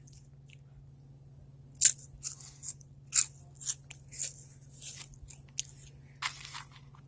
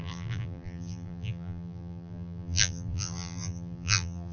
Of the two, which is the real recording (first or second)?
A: first